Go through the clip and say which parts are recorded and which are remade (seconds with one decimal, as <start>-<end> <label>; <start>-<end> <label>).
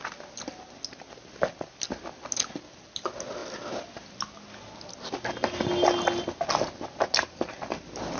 0.0-8.2 recorded